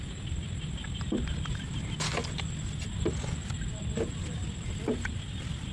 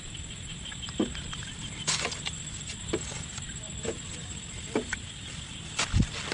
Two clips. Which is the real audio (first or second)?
first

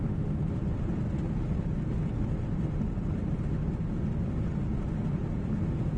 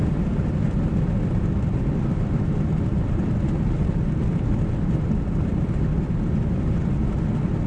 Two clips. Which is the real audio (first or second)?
first